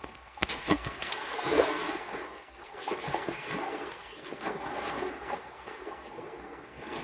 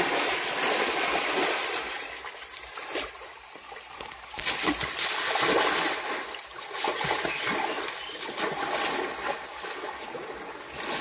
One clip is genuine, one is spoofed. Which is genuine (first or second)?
second